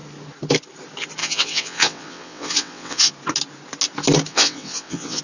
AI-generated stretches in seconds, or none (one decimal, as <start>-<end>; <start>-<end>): 1.2-3.1; 4.3-5.2